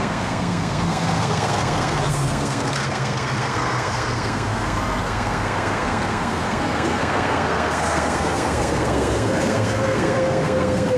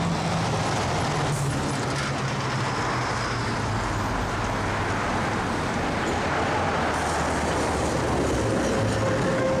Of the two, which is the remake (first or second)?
first